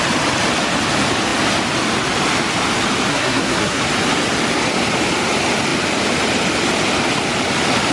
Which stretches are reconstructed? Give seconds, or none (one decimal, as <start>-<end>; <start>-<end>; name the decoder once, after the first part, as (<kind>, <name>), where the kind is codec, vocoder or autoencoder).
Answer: 3.1-3.8 (codec, SNAC)